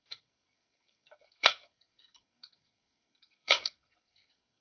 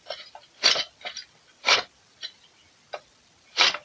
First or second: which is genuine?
second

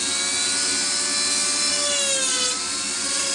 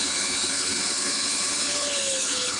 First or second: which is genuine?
first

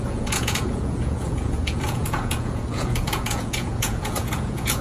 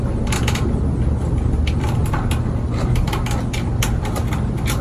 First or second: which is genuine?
second